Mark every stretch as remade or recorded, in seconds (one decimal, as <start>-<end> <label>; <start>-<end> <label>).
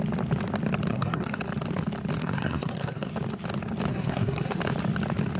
0.0-0.9 recorded; 0.9-1.4 remade; 1.4-2.2 recorded; 2.2-3.1 remade; 3.1-3.9 recorded; 3.9-4.6 remade; 4.6-5.4 recorded